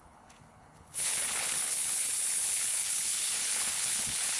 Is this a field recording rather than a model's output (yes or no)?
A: no